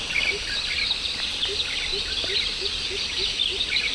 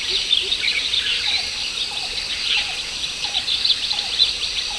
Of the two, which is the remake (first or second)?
second